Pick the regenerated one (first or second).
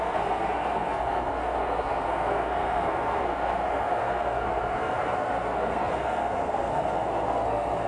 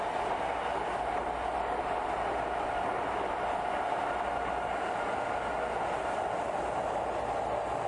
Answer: first